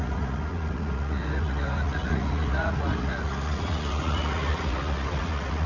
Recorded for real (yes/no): no